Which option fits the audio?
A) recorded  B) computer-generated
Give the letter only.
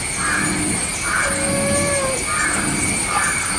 A